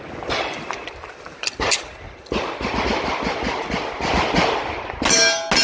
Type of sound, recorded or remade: recorded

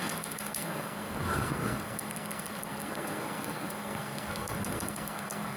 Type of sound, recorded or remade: remade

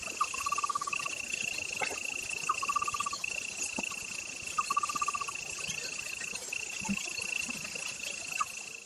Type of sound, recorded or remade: recorded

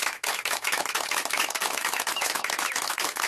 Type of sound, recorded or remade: remade